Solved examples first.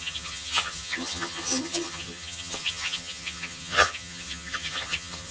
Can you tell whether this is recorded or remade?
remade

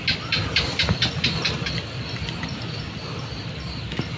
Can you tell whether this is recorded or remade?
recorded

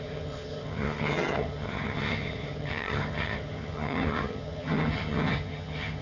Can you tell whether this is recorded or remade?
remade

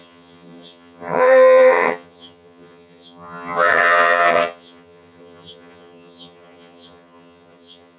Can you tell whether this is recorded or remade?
remade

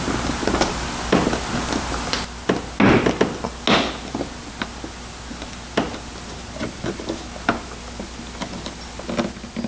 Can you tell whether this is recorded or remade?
recorded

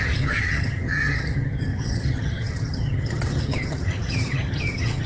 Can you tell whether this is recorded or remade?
remade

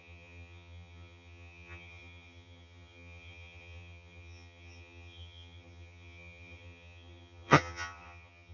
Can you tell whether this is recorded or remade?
remade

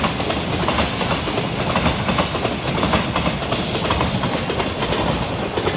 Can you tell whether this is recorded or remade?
recorded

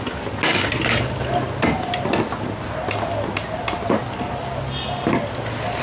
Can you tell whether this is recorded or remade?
recorded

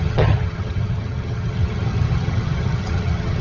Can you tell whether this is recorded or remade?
remade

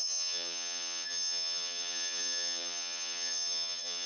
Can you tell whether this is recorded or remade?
remade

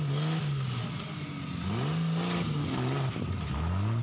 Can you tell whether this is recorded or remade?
recorded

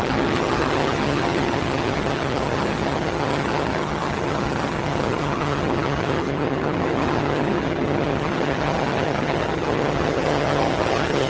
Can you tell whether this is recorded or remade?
remade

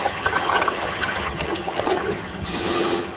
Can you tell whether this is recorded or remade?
remade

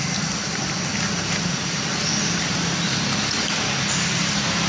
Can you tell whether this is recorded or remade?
recorded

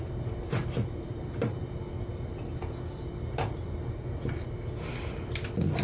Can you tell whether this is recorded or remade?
recorded